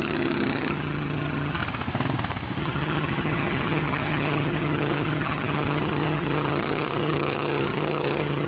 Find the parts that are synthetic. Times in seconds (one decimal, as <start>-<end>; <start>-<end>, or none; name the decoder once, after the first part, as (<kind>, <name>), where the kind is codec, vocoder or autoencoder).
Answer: 0.0-1.6 (vocoder, HiFi-GAN); 2.6-8.5